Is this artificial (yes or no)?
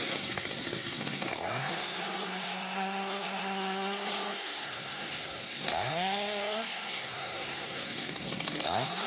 yes